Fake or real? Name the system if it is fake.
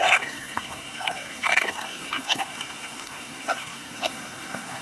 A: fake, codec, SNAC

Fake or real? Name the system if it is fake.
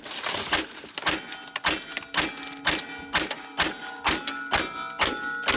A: real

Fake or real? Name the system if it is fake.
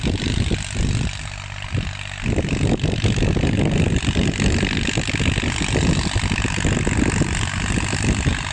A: real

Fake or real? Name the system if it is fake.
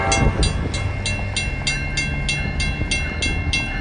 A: real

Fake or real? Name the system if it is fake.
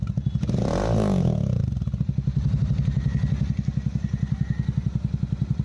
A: real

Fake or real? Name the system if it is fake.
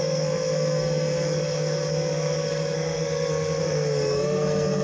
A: fake, codec, SNAC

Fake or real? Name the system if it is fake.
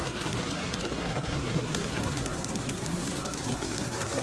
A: fake, codec, SNAC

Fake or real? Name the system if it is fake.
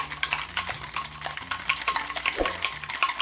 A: real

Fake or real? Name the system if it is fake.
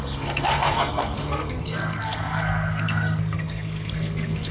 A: fake, codec, SNAC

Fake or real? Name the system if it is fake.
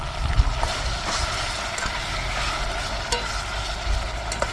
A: real